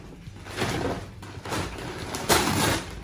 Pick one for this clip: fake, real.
fake